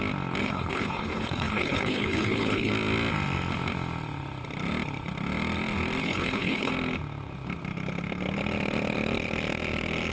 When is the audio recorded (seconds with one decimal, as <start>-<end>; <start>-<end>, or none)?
0.0-0.4; 2.7-6.0; 6.7-10.1